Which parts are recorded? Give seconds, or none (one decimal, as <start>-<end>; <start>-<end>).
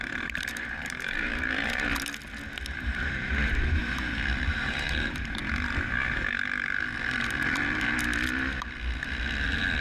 1.9-2.8; 3.8-4.5; 5.4-9.8